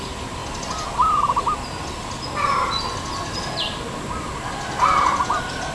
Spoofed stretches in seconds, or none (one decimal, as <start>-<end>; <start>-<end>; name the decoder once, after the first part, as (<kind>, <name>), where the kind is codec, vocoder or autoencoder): none